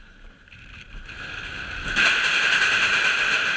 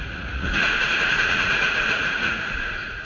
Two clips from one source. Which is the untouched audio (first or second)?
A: first